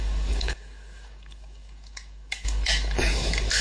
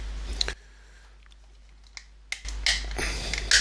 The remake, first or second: first